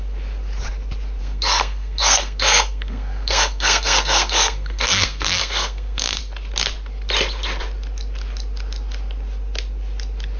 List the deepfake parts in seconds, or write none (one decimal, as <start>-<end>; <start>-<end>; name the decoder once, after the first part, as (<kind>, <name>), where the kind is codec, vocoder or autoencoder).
1.2-6.2 (codec, SNAC)